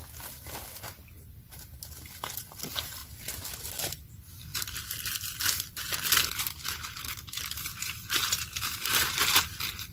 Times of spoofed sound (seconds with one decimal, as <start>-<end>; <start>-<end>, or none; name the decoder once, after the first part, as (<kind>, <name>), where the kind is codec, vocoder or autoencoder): 7.7-9.4 (vocoder, BigVGAN v2)